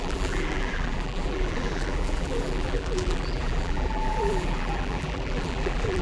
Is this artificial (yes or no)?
yes